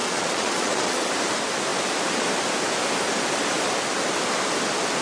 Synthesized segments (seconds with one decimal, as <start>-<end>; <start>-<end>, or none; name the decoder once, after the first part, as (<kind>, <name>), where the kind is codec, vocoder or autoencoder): 0.0-1.1 (vocoder, Vocos)